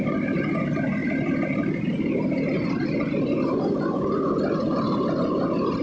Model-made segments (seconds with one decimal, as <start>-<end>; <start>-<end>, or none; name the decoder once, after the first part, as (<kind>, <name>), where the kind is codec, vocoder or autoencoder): none